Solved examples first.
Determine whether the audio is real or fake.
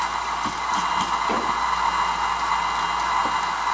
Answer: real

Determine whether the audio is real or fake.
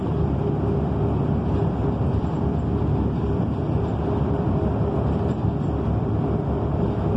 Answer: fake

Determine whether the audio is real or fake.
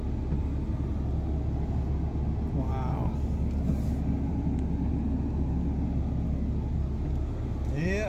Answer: real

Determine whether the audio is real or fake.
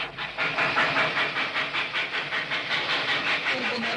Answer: fake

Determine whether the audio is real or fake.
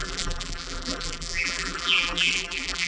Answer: fake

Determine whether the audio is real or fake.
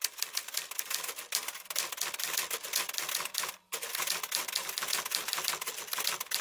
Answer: real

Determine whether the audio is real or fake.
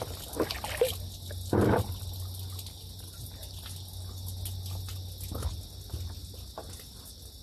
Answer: real